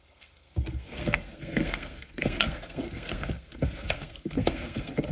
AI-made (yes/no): yes